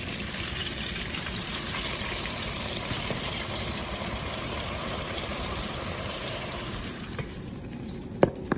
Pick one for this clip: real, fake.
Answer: fake